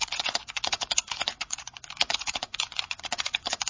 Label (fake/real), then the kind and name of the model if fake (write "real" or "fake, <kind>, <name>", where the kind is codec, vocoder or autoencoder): fake, vocoder, Vocos